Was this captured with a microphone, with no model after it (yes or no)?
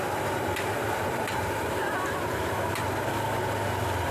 yes